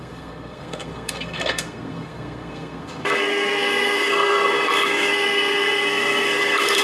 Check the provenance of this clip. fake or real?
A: fake